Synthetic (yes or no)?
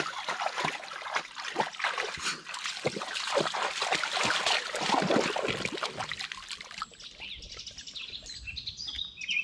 no